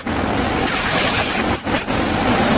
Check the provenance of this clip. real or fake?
real